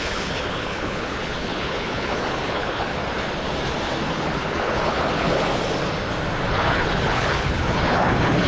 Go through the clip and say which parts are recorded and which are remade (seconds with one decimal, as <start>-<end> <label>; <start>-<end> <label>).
0.0-3.0 remade; 3.0-4.1 recorded; 4.1-5.5 remade; 5.5-6.5 recorded; 6.5-8.5 remade